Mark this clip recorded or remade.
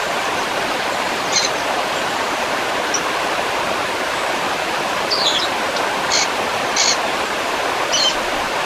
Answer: recorded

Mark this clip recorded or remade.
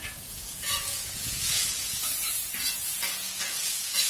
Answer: remade